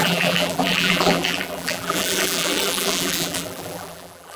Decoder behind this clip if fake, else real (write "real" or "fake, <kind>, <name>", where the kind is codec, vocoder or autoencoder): fake, vocoder, BigVGAN v2